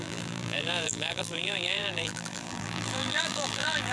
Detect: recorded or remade remade